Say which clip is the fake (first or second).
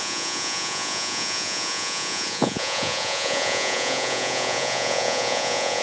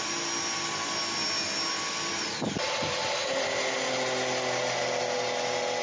first